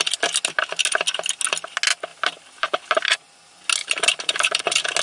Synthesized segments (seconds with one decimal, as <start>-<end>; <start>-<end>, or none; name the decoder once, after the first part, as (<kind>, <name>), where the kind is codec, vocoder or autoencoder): 2.1-2.9 (vocoder, BigVGAN v2); 3.8-4.6